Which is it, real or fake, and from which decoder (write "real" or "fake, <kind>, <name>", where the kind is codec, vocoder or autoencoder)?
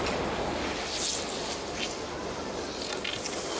real